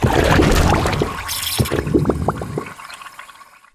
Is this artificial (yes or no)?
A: no